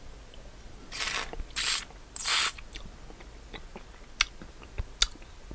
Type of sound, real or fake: real